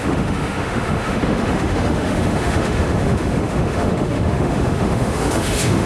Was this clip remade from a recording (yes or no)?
yes